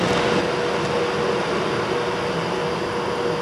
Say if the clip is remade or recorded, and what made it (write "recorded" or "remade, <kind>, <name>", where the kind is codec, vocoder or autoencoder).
recorded